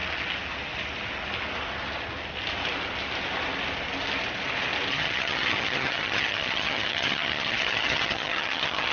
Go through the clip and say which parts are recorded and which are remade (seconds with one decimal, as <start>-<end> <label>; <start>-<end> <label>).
0.0-4.9 recorded; 4.9-8.9 remade